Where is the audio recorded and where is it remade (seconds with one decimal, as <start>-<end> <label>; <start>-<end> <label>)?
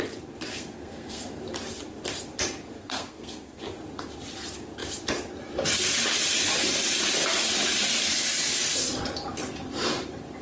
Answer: 0.0-0.5 recorded; 0.5-1.4 remade; 1.4-2.8 recorded; 2.8-3.6 remade; 3.6-10.4 recorded